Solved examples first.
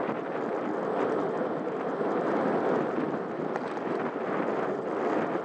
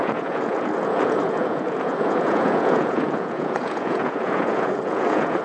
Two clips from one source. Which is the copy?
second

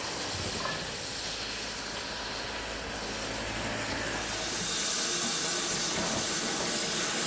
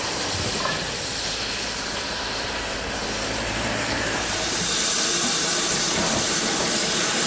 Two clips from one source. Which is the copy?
second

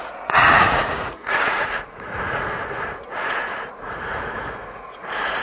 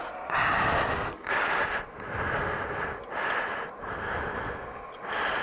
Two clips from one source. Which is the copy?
first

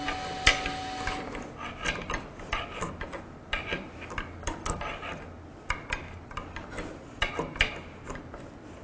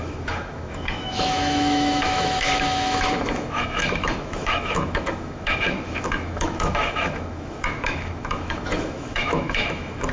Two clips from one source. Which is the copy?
second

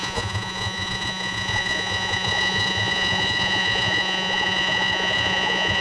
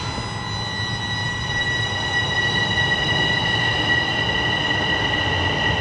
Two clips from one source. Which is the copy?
first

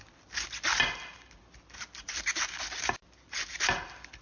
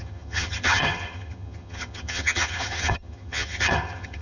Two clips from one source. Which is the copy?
second